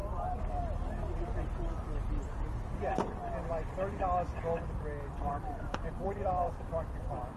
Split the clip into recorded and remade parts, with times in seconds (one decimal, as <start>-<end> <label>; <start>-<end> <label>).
0.0-3.5 recorded; 3.5-7.4 remade

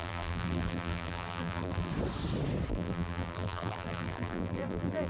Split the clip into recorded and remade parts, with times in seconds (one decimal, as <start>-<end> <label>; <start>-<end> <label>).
0.0-1.9 remade; 1.9-2.7 recorded; 2.7-5.1 remade